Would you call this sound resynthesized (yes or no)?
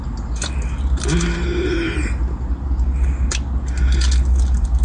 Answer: no